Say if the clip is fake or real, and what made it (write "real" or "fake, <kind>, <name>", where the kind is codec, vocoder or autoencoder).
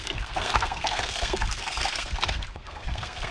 fake, codec, SNAC